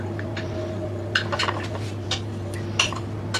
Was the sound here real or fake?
real